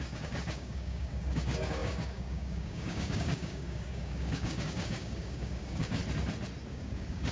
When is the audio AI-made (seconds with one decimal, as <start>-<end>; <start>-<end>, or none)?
0.0-6.0; 6.7-7.3